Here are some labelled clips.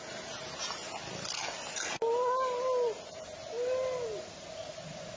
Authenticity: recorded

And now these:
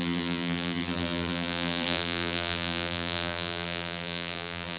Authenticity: remade